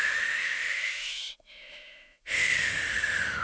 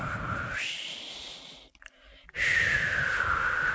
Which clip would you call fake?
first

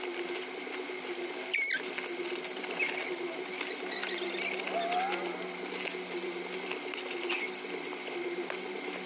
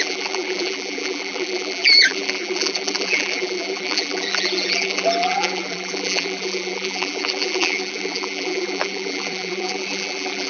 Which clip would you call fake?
second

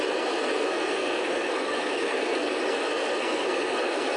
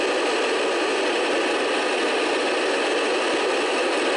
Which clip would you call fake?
first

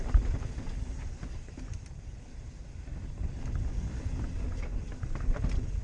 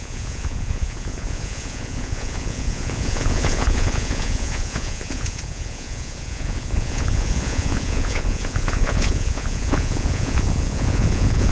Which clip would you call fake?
second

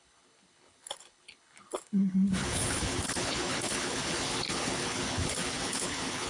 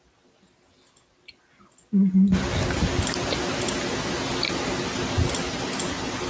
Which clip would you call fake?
first